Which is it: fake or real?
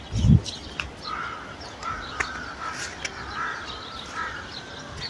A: real